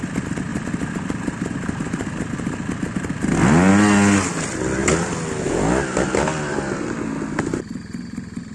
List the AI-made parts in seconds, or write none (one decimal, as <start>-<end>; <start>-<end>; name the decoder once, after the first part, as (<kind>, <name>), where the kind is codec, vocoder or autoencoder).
none

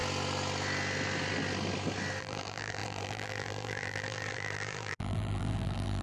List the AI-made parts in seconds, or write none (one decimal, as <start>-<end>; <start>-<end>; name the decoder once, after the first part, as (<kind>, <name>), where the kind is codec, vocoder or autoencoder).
2.2-6.0 (vocoder, BigVGAN v2)

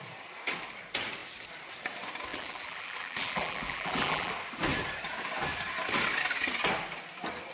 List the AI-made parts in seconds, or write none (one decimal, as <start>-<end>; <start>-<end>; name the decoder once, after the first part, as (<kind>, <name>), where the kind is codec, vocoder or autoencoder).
2.3-4.3 (vocoder, BigVGAN v2)